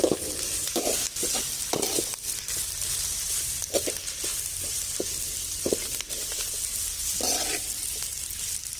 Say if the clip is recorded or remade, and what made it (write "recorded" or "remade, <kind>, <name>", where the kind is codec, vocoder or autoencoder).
recorded